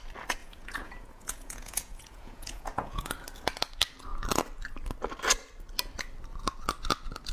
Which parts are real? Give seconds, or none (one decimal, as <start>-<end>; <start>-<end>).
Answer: 0.0-0.4; 3.1-7.3